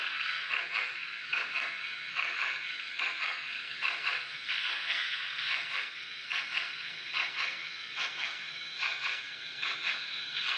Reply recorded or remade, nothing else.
remade